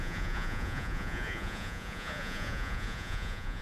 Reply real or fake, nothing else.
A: fake